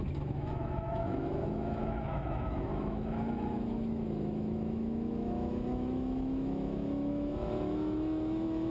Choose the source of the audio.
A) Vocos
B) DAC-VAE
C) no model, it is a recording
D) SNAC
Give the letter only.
B